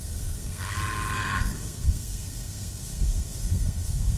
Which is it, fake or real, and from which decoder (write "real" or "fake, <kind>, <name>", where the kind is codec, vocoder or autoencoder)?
fake, codec, SNAC